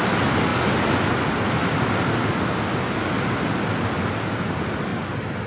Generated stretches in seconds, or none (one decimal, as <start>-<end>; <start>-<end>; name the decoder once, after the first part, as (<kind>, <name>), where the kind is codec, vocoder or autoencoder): none